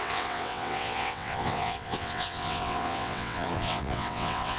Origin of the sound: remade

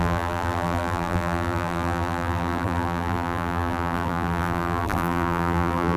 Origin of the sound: remade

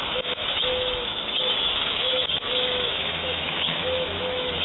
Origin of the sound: remade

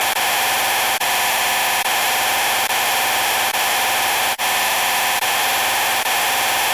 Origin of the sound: remade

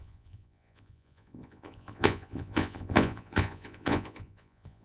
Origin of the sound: remade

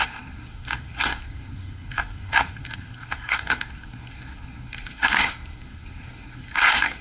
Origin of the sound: remade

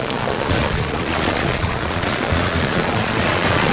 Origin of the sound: remade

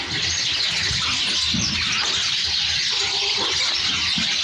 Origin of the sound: recorded